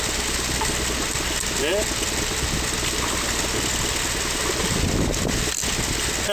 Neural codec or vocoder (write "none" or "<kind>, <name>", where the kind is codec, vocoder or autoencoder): none